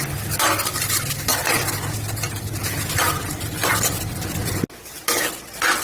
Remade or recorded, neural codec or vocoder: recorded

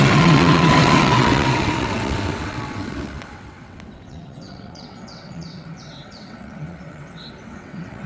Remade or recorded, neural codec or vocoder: remade, vocoder, WaveNeXt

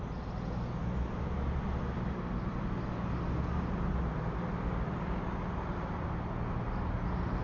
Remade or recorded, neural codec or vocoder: recorded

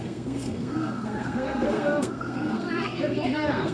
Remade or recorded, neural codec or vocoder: remade, codec, SNAC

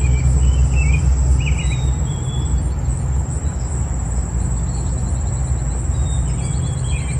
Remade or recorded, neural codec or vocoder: recorded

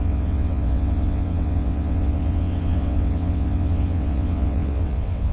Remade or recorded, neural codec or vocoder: remade, vocoder, WaveNeXt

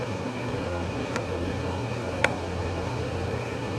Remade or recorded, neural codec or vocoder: remade, codec, SNAC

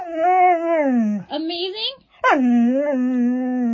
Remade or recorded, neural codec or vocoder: recorded